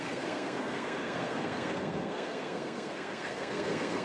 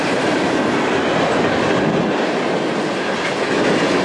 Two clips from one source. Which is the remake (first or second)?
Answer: first